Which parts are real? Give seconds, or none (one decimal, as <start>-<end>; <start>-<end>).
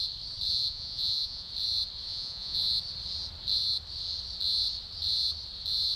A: 0.0-0.5; 1.5-2.1; 2.6-6.0